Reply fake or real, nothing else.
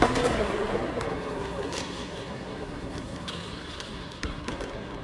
fake